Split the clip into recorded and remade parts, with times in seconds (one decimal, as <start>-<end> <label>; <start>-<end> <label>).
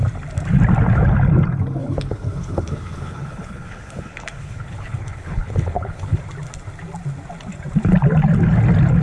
0.0-1.8 recorded; 1.8-6.2 remade; 6.2-9.0 recorded